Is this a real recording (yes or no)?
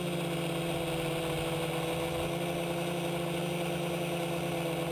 yes